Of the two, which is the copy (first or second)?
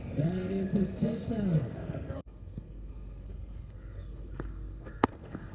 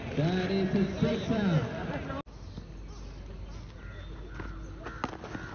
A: first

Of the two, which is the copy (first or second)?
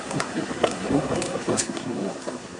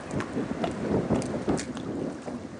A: first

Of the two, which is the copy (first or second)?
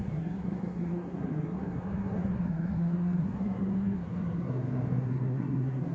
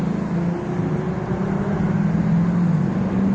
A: first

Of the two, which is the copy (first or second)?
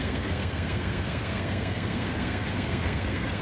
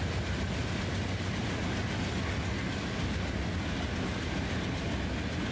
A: first